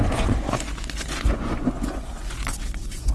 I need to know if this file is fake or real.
fake